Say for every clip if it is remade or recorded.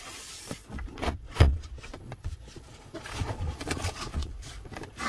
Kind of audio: remade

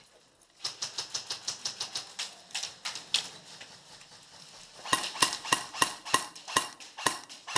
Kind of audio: recorded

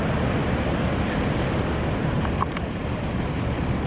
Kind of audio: recorded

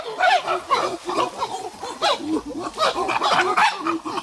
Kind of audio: recorded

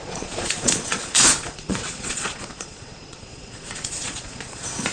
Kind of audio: remade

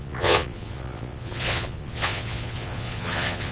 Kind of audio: remade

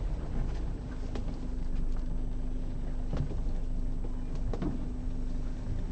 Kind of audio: recorded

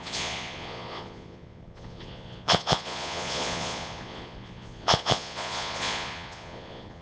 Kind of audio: remade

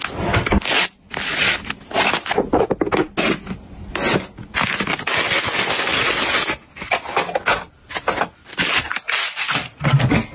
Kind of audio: recorded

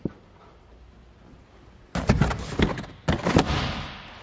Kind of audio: recorded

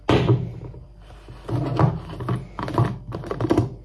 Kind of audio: recorded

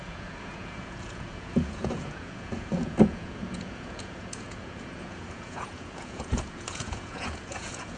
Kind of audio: remade